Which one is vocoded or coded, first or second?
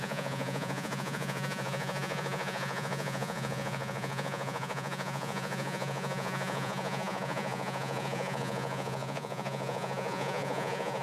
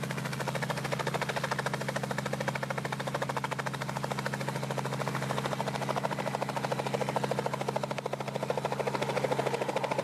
first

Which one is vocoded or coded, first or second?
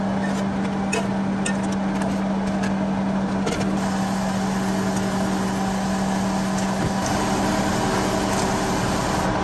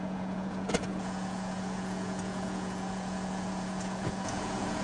second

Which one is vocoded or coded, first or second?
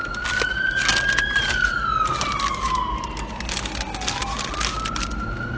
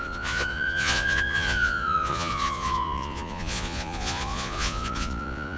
second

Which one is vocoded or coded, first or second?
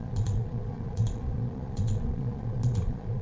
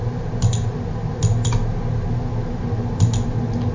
first